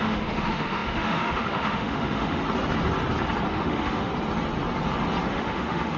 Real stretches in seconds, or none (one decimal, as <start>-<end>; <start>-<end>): 2.4-3.5; 4.1-5.3